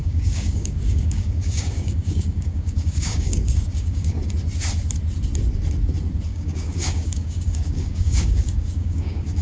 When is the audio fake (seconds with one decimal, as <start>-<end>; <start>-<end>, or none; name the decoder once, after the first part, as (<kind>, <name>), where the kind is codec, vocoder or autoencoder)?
0.0-4.2 (codec, DAC); 6.3-9.4